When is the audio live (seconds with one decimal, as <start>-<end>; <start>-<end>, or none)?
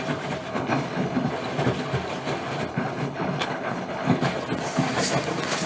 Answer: 0.0-0.5; 1.3-2.7; 4.2-5.7